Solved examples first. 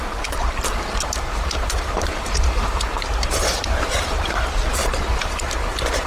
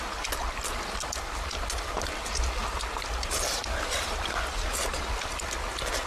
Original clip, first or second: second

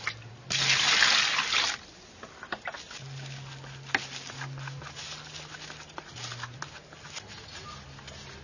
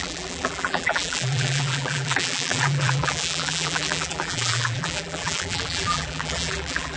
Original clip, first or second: first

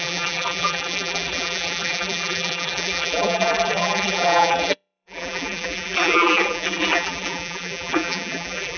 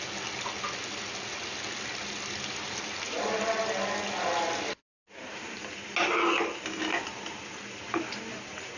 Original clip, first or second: second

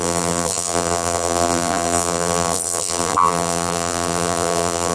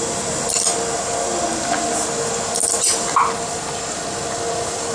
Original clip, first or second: second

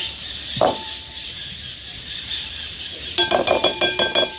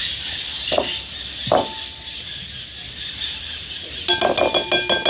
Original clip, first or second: second